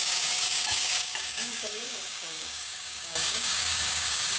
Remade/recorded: remade